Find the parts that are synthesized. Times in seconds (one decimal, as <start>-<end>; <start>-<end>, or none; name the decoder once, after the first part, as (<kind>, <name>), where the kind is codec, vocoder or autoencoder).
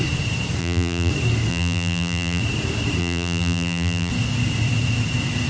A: 0.6-1.1 (vocoder, BigVGAN v2); 1.5-2.4; 3.0-4.1